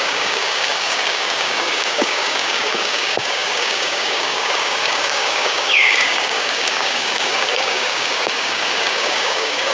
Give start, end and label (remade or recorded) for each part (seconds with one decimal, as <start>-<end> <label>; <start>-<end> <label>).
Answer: 0.0-9.7 remade